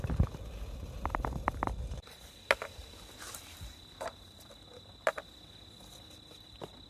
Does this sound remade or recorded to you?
recorded